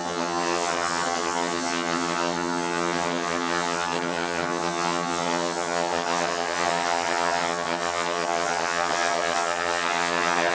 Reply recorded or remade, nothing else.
remade